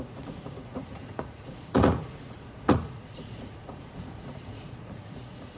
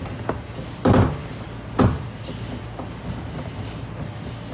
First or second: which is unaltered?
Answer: second